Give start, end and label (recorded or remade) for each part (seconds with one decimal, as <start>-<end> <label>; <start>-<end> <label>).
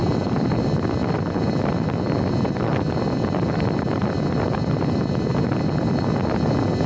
0.0-6.9 recorded